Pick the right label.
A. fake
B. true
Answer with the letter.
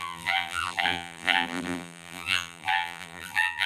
A